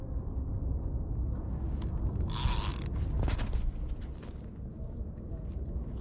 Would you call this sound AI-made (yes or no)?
no